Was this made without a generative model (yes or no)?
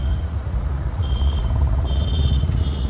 no